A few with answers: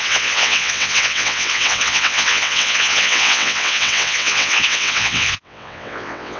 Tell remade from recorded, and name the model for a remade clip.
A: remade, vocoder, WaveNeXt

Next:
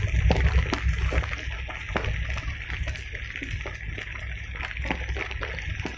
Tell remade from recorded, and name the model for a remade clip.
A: recorded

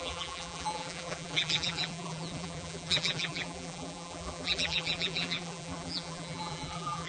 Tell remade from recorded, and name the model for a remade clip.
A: remade, vocoder, BigVGAN v2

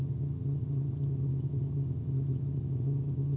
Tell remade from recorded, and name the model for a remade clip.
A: remade, vocoder, HiFi-GAN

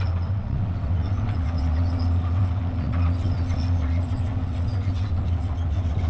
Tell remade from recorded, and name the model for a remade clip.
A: remade, vocoder, WaveNeXt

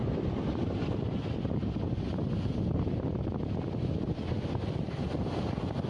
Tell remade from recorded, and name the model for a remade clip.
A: recorded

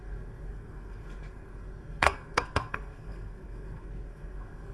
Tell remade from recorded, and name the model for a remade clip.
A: remade, codec, SNAC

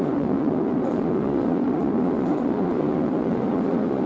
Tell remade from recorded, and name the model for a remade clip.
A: remade, vocoder, Vocos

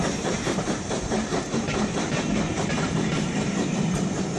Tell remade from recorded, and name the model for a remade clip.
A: remade, vocoder, BigVGAN v2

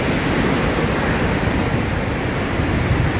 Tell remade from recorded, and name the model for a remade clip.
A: recorded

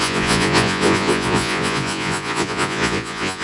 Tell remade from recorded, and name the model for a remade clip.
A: remade, vocoder, Vocos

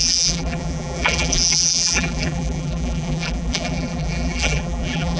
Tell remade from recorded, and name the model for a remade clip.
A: remade, vocoder, BigVGAN v2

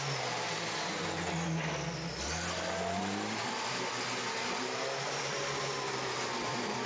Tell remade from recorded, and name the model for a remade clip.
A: recorded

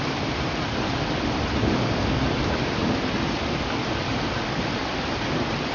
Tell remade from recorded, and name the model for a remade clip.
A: remade, vocoder, BigVGAN v2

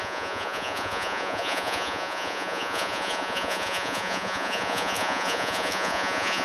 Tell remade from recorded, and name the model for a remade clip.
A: remade, vocoder, Vocos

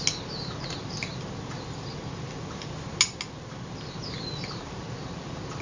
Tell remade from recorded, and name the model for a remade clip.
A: recorded